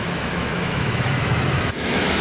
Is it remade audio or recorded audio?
remade